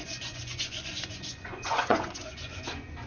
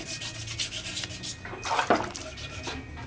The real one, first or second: second